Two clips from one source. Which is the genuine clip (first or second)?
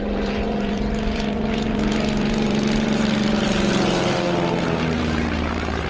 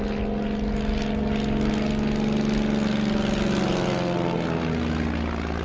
second